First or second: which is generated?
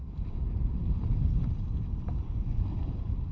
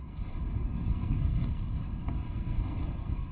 second